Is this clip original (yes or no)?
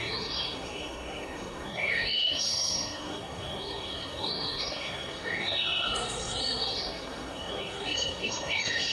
no